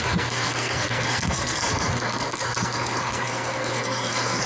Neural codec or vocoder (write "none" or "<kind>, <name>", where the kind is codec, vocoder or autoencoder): codec, SNAC